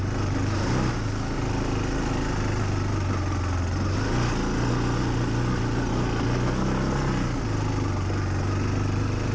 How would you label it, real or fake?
real